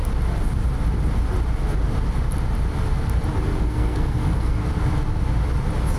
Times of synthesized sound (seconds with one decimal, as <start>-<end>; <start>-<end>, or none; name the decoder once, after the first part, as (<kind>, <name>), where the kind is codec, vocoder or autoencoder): 3.6-4.6 (codec, SNAC)